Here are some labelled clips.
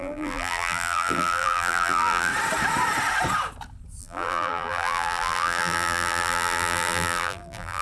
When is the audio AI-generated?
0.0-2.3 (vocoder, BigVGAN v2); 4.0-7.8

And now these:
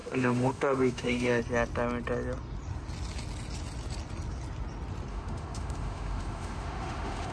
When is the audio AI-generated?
0.0-1.4 (autoencoder, DAC-VAE); 5.1-7.3

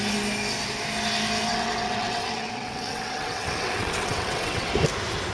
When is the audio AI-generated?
1.5-4.7 (vocoder, WaveNeXt)

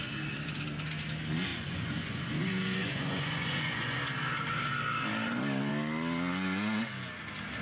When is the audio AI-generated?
1.5-4.0 (vocoder, Vocos)

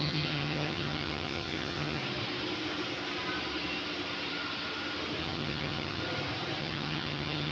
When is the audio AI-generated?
0.0-2.0 (vocoder, HiFi-GAN); 5.2-6.0; 6.6-7.5

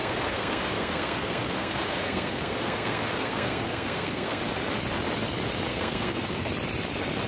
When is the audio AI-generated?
0.0-4.4 (codec, SNAC); 5.7-6.5

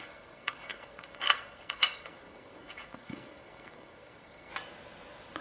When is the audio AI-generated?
0.0-4.5 (codec, SNAC)